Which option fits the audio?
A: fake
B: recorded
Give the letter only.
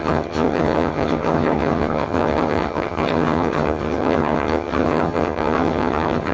A